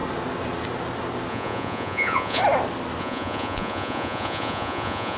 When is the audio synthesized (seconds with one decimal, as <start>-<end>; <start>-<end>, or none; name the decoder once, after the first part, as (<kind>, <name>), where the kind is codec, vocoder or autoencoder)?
1.3-2.4 (vocoder, Vocos); 3.0-5.2